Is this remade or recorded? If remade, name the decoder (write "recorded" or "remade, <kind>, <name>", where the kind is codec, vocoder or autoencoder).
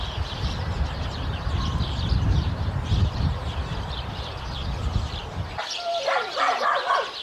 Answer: remade, vocoder, BigVGAN v2